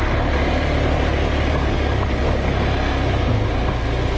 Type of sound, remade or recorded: recorded